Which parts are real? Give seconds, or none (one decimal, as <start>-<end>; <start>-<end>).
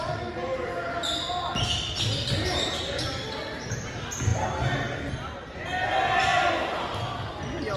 0.0-7.8